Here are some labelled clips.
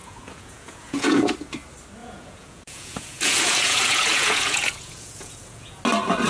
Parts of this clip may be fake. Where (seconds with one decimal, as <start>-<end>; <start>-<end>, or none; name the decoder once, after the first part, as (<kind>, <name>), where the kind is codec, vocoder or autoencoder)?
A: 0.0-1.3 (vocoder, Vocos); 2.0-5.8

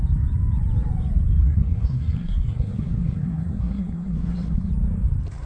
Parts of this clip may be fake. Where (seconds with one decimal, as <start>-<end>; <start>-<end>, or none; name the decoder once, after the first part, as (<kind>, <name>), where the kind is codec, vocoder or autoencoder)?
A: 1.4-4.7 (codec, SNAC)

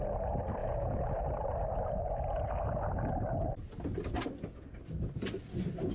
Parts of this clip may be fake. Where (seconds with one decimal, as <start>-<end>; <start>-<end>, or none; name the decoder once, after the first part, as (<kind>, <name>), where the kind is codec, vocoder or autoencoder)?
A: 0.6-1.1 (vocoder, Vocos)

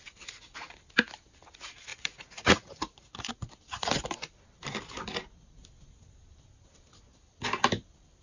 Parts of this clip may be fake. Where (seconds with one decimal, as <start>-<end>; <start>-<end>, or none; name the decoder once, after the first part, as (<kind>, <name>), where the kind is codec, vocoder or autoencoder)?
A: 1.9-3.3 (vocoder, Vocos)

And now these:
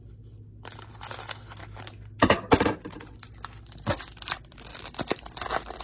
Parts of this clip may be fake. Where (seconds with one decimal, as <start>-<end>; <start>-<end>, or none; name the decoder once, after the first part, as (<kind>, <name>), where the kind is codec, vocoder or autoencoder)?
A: none

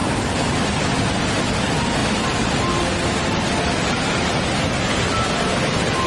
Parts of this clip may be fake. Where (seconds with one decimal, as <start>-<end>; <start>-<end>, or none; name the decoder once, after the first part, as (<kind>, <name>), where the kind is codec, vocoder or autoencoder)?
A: none

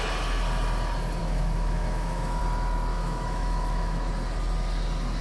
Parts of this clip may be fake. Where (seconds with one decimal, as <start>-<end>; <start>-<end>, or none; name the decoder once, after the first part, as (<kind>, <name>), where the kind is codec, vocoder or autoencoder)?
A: 1.2-2.4 (autoencoder, DAC-VAE); 2.9-4.1